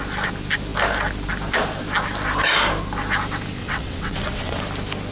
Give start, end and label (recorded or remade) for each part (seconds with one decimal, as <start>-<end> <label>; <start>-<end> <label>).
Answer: 0.0-3.6 recorded; 3.6-4.6 remade; 4.6-5.1 recorded